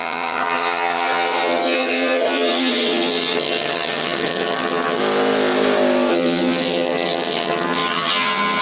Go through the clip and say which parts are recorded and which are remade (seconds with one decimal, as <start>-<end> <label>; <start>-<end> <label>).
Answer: 0.0-5.0 remade; 5.0-6.1 recorded; 6.1-8.6 remade